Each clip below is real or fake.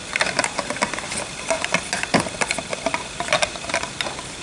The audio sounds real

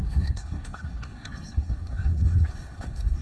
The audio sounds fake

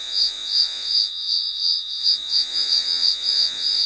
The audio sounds fake